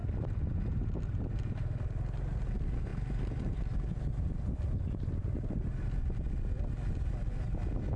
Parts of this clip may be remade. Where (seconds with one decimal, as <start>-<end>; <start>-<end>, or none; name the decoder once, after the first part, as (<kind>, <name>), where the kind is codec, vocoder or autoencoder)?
none